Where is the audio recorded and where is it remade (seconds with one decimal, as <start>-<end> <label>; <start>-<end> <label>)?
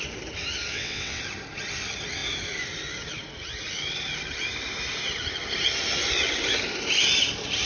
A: 0.0-0.7 recorded; 0.7-1.2 remade; 1.2-7.7 recorded